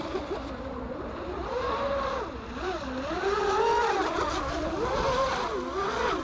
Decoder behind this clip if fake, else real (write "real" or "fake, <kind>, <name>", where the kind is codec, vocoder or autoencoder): real